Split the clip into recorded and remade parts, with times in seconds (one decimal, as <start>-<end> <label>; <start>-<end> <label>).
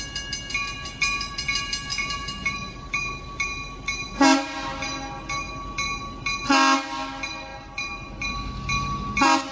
0.0-1.9 recorded; 1.9-3.1 remade; 3.1-7.5 recorded; 7.5-8.2 remade; 8.2-9.5 recorded